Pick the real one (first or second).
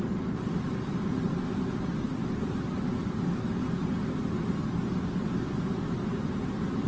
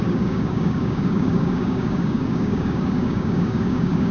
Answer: first